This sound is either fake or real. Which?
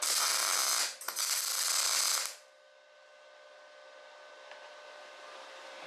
real